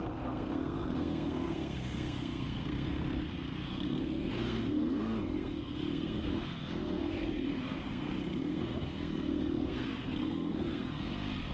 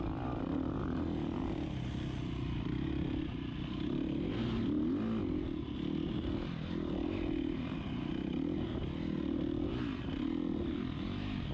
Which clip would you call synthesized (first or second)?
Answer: first